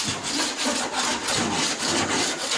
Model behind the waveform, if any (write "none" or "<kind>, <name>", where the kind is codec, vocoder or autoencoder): none